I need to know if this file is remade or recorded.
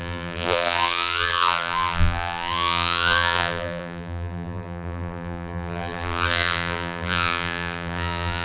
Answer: remade